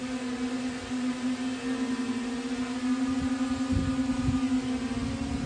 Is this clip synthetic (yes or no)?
no